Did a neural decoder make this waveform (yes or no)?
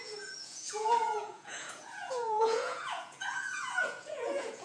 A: yes